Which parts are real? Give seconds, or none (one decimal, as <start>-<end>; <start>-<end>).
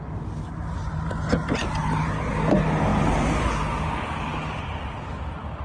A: 0.0-0.6; 2.3-2.9; 3.5-5.6